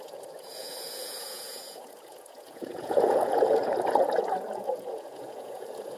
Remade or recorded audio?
remade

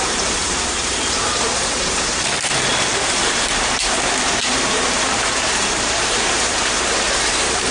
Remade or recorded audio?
remade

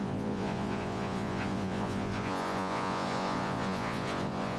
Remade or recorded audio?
remade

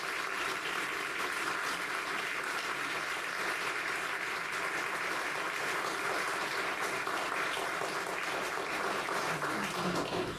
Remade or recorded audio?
recorded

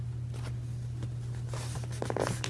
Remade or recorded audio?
recorded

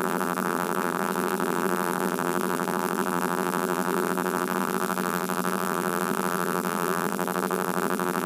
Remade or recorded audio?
remade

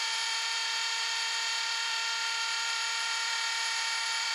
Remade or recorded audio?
remade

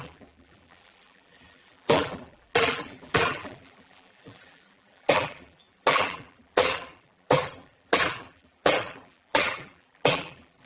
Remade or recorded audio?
remade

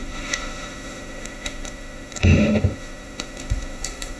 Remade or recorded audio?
remade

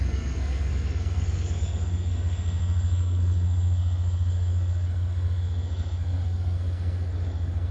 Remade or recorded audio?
remade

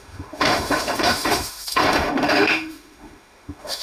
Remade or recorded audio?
remade